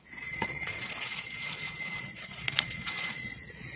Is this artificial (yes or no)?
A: yes